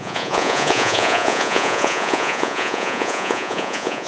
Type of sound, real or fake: fake